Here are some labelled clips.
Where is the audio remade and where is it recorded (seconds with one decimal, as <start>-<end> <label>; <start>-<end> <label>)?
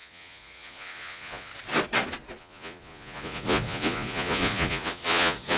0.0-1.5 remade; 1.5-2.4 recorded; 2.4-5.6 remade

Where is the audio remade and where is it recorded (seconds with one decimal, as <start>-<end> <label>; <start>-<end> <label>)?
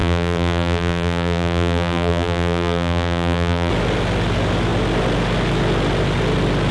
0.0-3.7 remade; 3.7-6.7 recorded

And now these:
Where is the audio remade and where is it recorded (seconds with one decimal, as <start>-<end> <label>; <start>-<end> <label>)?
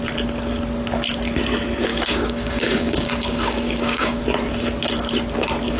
0.0-1.9 recorded; 1.9-4.2 remade; 4.2-5.8 recorded